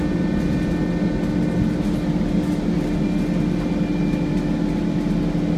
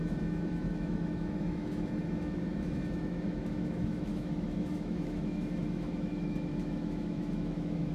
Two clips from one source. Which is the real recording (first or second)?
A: first